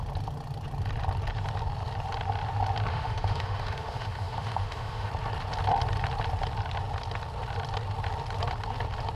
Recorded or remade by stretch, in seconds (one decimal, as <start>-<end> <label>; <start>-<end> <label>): 0.0-2.9 recorded; 2.9-5.1 remade; 5.1-9.2 recorded